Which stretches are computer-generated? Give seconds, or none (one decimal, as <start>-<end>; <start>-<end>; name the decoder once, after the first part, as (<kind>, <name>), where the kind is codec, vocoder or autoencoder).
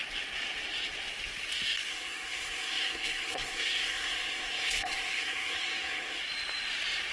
1.9-6.2 (codec, SNAC)